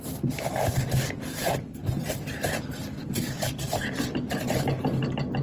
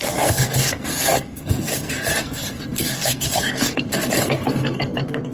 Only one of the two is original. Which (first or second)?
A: first